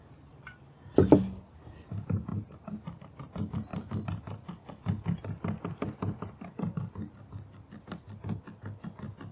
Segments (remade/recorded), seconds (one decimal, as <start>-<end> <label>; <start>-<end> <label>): 0.0-9.3 recorded